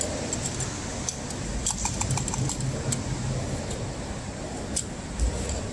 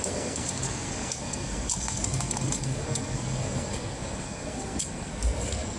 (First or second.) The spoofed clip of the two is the second